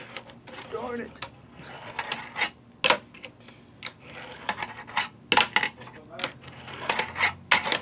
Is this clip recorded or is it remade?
recorded